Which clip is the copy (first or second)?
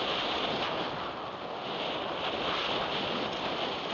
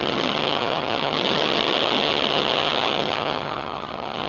second